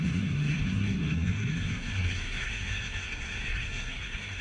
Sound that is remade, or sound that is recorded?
remade